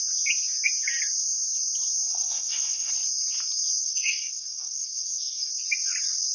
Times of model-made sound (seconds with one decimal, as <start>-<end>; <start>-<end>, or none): 2.1-2.9; 3.8-5.5